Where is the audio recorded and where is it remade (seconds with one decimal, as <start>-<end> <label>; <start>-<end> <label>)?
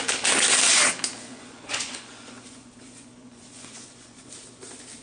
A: 0.0-1.3 recorded; 1.3-4.3 remade; 4.3-5.0 recorded